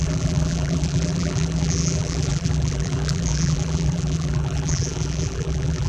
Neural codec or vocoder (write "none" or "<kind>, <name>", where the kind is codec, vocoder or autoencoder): vocoder, BigVGAN v2